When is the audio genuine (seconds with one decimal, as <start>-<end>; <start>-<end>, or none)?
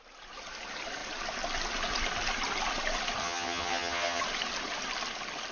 0.0-3.2; 4.2-5.5